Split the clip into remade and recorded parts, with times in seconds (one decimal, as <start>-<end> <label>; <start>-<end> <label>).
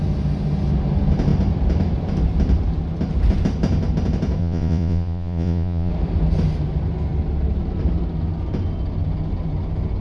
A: 0.0-4.4 recorded; 4.4-5.9 remade; 5.9-10.0 recorded